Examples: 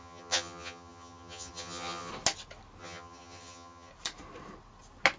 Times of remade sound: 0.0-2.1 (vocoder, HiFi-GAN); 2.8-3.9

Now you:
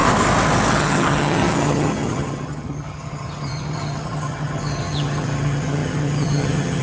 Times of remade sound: 0.7-6.8 (vocoder, HiFi-GAN)

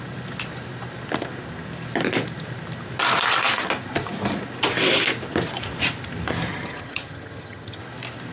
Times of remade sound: 6.5-7.8 (vocoder, HiFi-GAN)

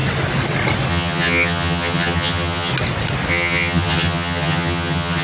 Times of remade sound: 0.9-2.7 (vocoder, HiFi-GAN); 3.3-5.2

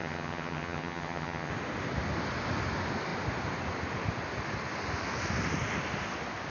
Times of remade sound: 0.0-1.5 (vocoder, HiFi-GAN)

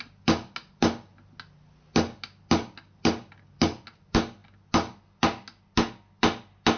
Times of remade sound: none

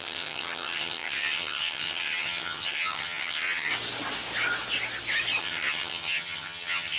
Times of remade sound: 0.0-3.7 (vocoder, HiFi-GAN); 5.4-7.0

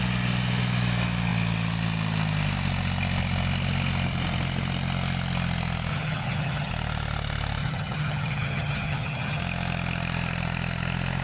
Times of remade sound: 5.9-6.7 (vocoder, HiFi-GAN); 7.6-9.4